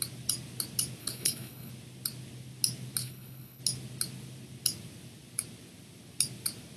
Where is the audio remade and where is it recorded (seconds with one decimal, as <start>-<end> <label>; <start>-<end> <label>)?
0.0-1.0 recorded; 1.0-1.7 remade; 1.7-3.0 recorded; 3.0-3.6 remade; 3.6-6.8 recorded